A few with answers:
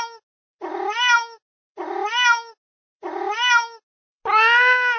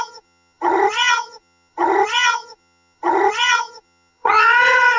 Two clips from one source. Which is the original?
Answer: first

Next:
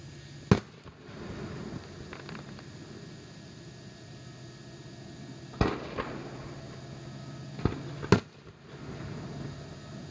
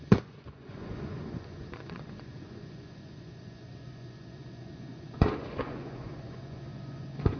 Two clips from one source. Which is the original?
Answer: first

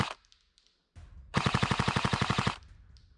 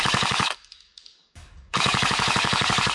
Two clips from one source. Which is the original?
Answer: first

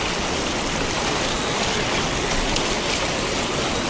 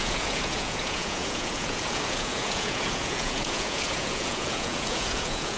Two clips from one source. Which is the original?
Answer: first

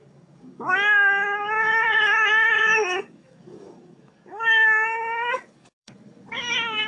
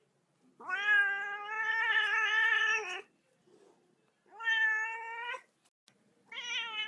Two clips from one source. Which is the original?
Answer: second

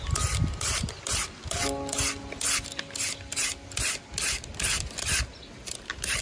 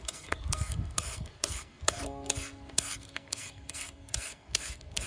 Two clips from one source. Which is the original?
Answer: first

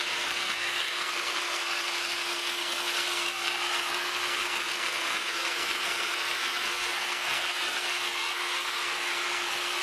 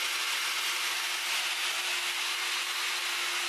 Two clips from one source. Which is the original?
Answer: second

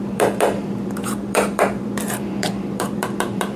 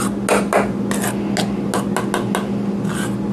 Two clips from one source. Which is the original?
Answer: second